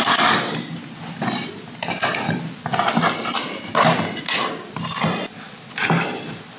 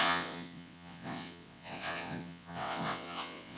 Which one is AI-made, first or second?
second